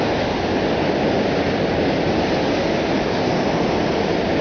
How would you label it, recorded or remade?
recorded